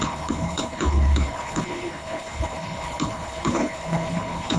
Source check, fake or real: fake